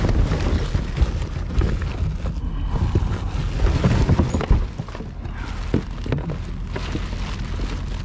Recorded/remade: recorded